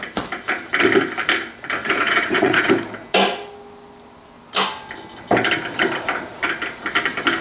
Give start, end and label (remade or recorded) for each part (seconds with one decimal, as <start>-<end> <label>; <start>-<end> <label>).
0.0-1.8 recorded; 1.8-2.7 remade; 2.7-7.4 recorded